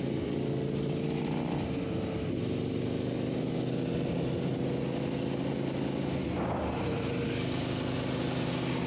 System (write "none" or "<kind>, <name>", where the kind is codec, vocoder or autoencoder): none